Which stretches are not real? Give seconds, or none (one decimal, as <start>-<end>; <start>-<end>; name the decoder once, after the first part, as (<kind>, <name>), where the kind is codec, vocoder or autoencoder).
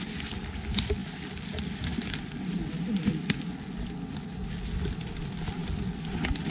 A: none